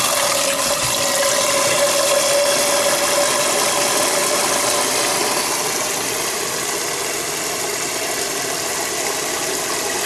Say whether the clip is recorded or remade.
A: recorded